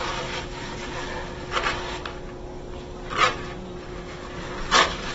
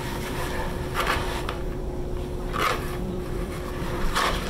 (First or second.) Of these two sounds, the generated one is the second